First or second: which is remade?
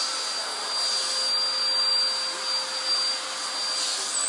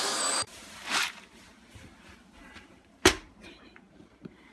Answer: second